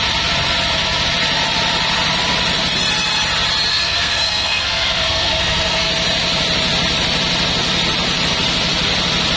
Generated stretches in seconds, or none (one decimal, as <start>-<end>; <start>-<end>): 3.7-5.9